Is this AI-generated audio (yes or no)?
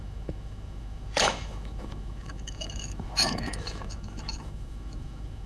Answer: yes